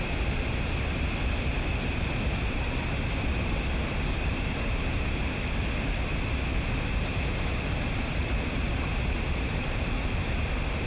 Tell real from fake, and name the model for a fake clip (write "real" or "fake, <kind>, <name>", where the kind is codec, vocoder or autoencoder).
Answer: real